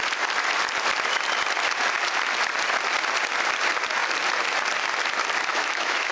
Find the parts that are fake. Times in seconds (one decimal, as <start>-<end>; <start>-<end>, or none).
5.5-6.1